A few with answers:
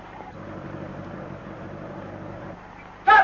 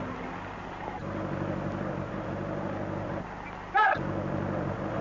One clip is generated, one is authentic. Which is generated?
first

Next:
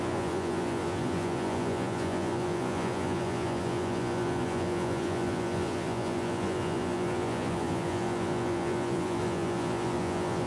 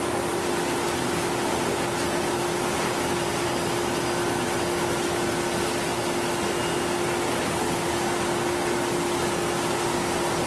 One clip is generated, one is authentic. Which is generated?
first